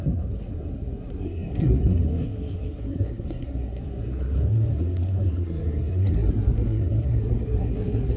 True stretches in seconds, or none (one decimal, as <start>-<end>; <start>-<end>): none